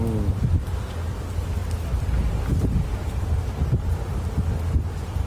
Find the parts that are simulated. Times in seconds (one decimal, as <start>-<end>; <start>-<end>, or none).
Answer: none